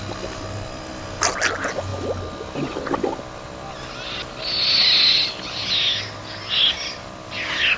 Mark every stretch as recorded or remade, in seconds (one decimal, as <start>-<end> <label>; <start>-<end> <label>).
0.0-7.8 recorded